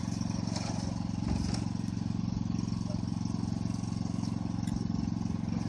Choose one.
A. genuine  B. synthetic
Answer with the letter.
A